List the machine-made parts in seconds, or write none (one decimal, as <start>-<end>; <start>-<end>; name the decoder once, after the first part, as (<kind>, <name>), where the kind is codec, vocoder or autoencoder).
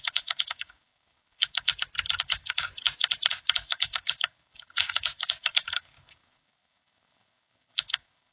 0.0-1.7 (codec, DAC); 2.2-2.7; 3.3-8.3